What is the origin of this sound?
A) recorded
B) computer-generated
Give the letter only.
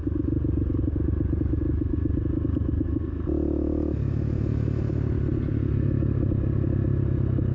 A